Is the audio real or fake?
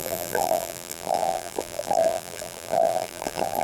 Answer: fake